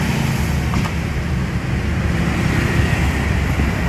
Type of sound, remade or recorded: recorded